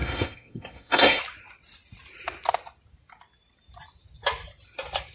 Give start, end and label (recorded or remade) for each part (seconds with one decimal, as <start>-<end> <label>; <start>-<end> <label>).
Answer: 0.0-1.2 remade; 1.2-5.1 recorded